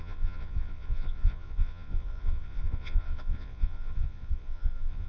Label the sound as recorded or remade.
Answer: remade